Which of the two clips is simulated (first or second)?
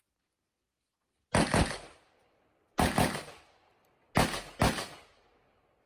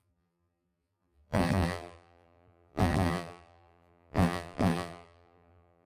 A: second